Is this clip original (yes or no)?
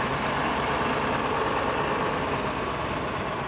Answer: yes